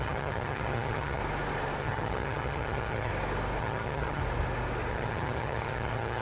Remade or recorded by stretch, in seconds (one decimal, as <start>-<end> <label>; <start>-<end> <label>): 0.0-1.2 remade; 1.2-1.8 recorded; 1.8-3.1 remade; 3.1-3.6 recorded; 3.6-4.2 remade; 4.2-4.9 recorded; 4.9-6.2 remade